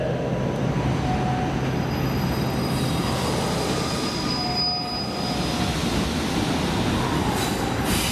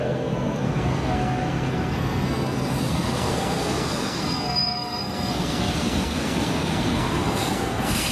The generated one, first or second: second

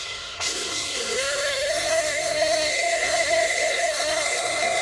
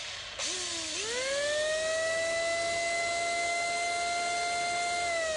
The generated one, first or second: first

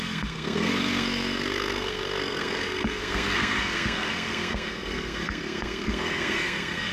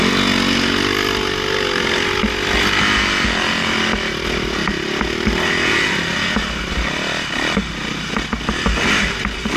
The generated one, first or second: first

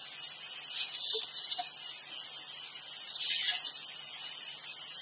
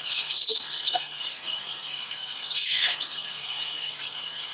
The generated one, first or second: second